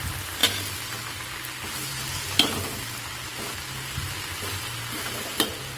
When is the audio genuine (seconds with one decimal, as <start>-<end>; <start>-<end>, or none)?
0.0-5.8